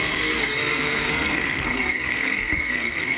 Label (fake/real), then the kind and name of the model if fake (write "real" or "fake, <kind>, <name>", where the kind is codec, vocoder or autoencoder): fake, codec, SNAC